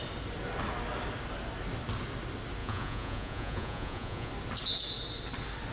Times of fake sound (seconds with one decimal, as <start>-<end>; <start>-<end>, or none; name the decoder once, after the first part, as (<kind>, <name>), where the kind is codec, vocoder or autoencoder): 2.6-4.3 (vocoder, Vocos)